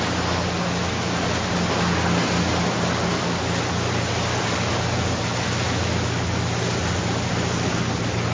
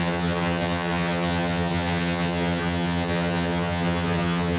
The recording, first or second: first